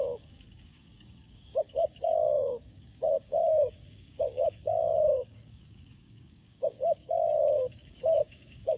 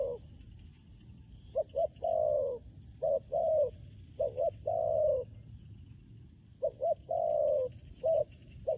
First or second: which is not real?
first